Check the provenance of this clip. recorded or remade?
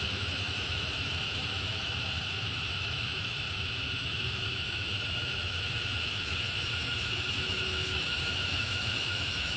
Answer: remade